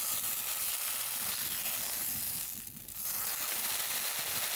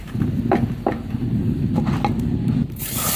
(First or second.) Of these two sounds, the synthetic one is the second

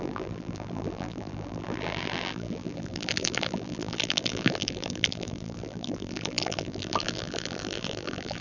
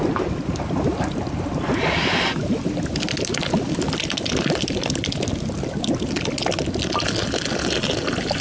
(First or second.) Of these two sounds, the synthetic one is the first